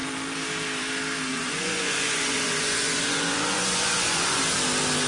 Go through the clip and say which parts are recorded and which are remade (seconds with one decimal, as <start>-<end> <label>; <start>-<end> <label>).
0.0-1.3 recorded; 1.3-4.4 remade; 4.4-5.1 recorded

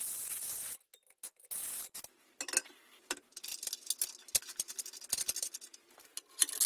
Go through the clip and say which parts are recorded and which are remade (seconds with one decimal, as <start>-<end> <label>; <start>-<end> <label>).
0.0-6.7 recorded